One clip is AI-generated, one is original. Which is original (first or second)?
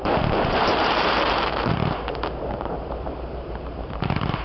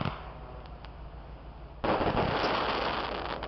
second